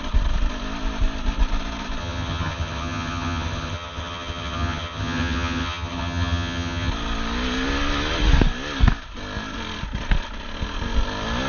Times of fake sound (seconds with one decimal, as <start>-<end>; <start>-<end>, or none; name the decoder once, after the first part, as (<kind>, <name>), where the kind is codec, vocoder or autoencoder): 2.0-6.9 (vocoder, HiFi-GAN)